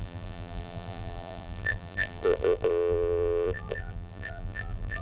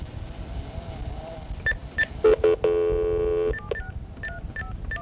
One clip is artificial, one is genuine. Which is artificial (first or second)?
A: first